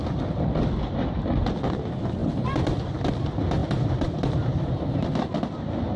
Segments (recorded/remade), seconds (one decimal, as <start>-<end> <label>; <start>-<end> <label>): 0.0-2.2 recorded; 2.2-3.1 remade; 3.1-3.6 recorded; 3.6-4.7 remade; 4.7-6.0 recorded